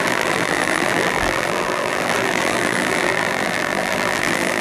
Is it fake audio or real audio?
fake